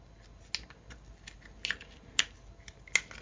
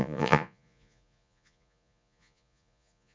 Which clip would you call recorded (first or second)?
first